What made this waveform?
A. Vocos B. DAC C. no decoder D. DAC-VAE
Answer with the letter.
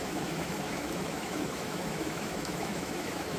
D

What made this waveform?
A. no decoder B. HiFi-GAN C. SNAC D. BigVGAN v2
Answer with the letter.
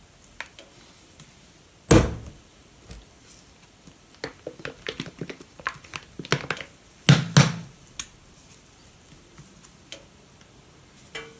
A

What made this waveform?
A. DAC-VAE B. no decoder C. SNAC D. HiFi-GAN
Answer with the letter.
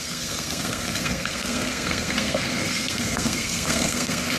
C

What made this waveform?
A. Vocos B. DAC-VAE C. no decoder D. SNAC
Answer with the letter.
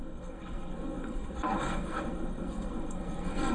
D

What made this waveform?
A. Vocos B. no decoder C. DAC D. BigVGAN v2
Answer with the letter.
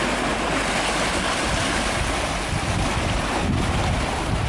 B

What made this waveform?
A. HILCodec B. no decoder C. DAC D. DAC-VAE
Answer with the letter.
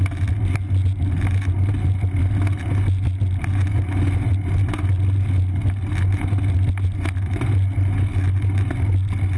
B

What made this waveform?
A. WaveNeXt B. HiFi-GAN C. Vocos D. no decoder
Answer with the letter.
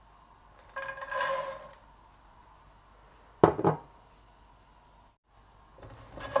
D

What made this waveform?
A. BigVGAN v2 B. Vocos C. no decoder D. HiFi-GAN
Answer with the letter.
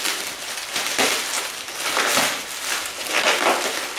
C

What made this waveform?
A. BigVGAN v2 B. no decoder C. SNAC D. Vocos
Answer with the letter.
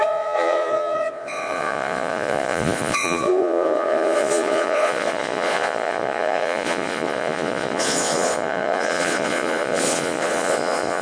D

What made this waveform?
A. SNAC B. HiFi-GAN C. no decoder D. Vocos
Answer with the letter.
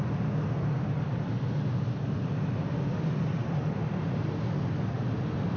C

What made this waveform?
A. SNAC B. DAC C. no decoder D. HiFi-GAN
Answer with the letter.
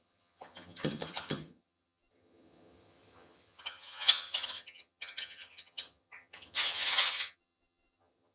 D